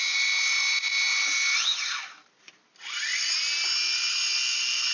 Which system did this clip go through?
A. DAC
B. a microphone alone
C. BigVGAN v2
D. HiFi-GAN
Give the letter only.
B